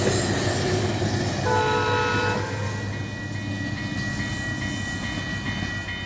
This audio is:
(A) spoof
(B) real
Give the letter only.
B